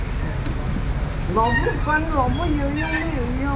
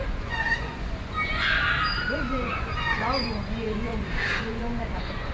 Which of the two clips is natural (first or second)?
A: first